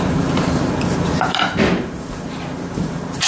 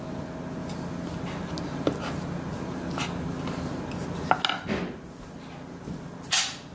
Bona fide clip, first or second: second